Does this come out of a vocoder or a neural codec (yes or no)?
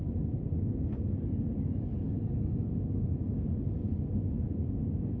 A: no